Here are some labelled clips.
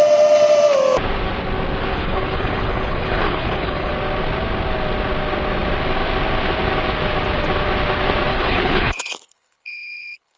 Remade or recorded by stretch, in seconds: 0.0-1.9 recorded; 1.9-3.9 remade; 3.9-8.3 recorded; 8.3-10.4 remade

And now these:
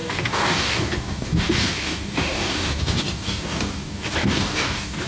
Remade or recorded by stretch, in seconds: 0.0-5.1 remade

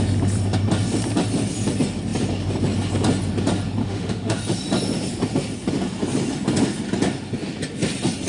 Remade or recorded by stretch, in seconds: 0.0-3.8 recorded; 3.8-4.4 remade; 4.4-8.3 recorded

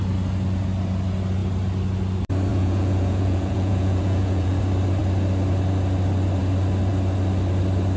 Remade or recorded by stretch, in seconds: 0.0-2.5 recorded; 2.5-4.6 remade; 4.6-8.0 recorded

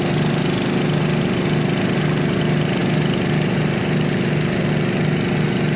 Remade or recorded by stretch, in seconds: 0.0-5.8 recorded

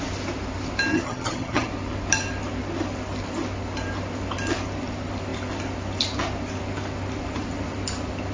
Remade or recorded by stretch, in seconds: 0.0-0.9 recorded; 0.9-1.7 remade; 1.7-8.3 recorded